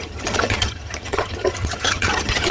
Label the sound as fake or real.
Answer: fake